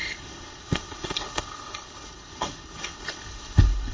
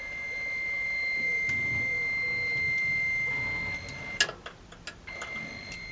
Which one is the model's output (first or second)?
first